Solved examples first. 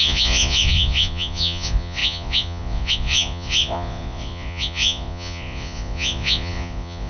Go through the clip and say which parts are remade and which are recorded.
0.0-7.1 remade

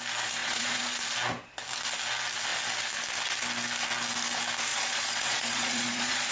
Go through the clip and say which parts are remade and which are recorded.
0.0-0.4 recorded; 0.4-1.0 remade; 1.0-4.7 recorded; 4.7-6.3 remade